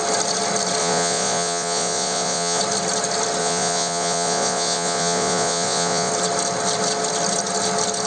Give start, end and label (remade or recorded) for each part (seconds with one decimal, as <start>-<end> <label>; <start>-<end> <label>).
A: 0.0-0.8 recorded; 0.8-2.6 remade; 2.6-3.4 recorded; 3.4-6.1 remade; 6.1-8.1 recorded